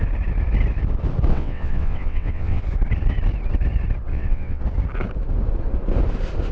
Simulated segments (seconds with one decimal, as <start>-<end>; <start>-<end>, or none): 1.3-2.6; 4.1-4.6